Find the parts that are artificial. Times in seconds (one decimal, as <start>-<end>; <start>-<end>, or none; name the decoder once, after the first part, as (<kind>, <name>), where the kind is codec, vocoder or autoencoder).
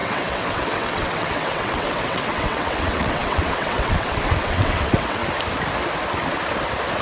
0.0-5.2 (vocoder, WaveNeXt)